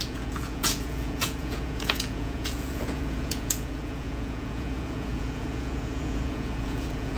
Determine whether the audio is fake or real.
fake